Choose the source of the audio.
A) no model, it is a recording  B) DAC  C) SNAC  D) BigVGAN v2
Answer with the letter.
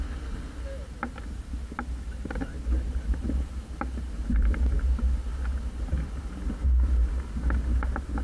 A